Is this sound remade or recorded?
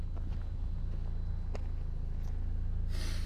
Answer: recorded